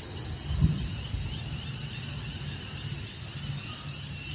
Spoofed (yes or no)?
no